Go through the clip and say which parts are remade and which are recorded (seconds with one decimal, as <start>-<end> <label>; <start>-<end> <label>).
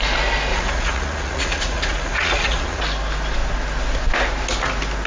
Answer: 0.0-0.5 recorded; 0.5-2.8 remade; 2.8-5.1 recorded